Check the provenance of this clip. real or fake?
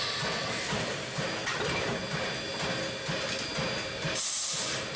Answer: real